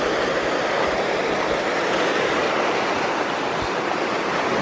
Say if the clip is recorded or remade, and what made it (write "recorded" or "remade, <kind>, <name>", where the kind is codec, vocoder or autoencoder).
recorded